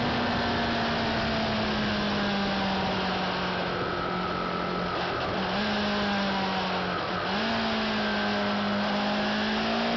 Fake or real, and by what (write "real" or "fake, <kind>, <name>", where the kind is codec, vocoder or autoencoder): real